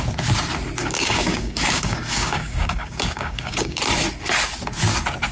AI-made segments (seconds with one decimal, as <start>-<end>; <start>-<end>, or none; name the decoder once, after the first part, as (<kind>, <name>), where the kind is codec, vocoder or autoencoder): 0.8-3.8 (codec, DAC)